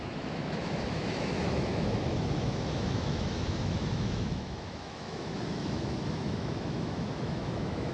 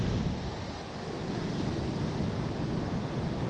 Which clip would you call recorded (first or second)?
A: second